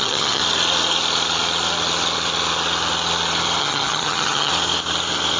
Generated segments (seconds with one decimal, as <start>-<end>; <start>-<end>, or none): 0.0-0.4; 3.6-4.5